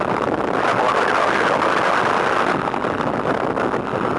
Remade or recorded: recorded